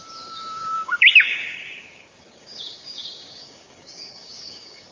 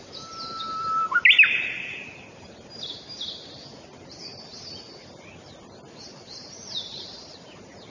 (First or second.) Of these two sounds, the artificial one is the first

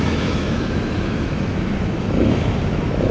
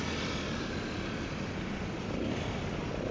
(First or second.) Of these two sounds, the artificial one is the first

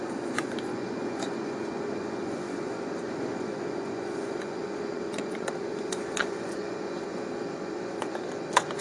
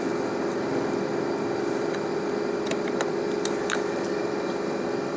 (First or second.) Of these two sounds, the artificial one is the first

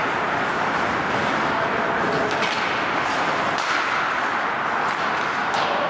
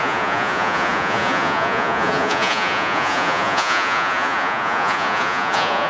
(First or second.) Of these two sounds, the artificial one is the second